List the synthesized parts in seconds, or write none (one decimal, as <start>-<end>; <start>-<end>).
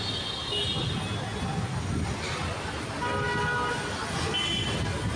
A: none